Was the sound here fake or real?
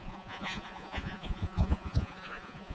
fake